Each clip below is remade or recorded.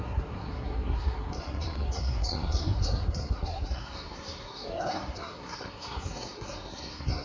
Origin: remade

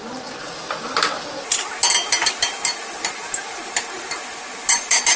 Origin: recorded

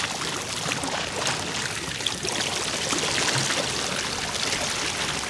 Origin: recorded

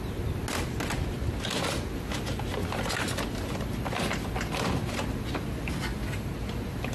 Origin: recorded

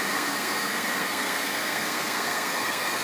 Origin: remade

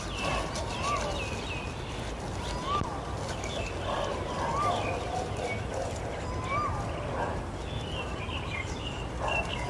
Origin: recorded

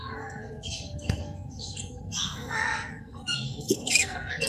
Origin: remade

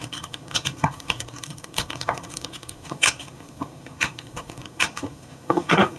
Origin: remade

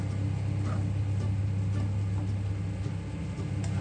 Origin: recorded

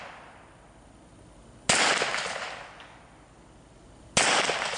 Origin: recorded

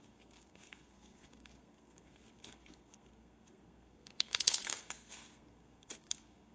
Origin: remade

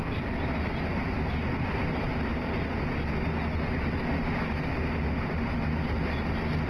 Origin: recorded